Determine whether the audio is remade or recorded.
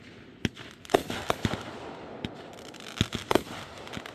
recorded